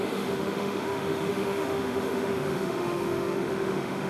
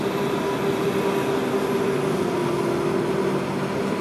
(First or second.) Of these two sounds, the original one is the second